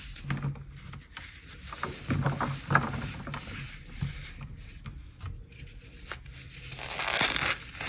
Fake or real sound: real